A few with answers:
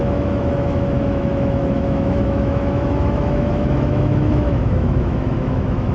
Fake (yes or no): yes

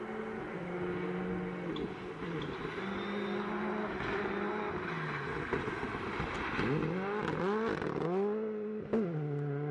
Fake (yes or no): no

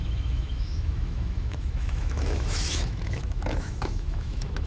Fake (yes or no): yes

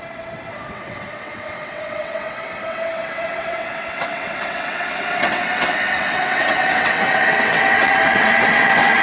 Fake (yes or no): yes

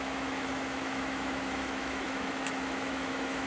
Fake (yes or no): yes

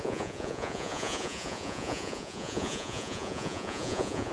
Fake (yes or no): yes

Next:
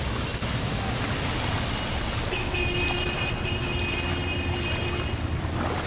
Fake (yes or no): no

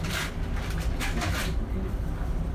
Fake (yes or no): no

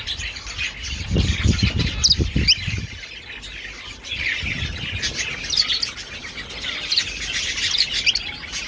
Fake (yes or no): no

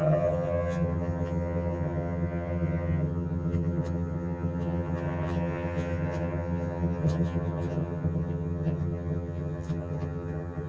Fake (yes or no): yes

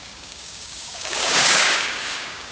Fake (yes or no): yes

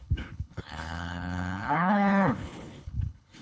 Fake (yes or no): yes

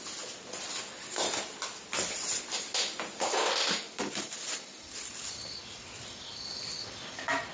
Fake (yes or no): no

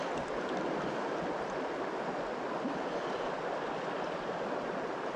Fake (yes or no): no